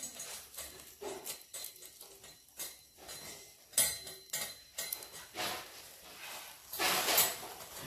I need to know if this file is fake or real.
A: real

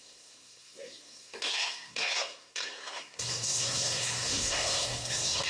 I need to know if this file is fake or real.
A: fake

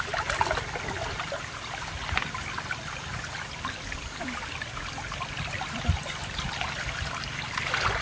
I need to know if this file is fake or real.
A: real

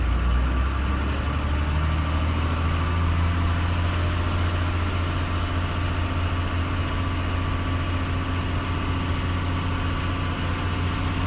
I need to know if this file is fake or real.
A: real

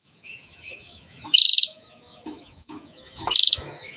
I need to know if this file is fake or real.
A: fake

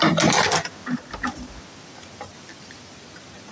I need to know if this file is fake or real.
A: real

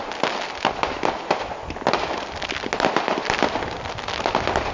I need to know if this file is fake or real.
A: real